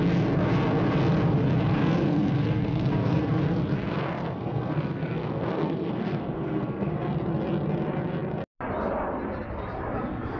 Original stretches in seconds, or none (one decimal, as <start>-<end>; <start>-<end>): 0.0-1.8; 3.4-3.8; 6.9-10.4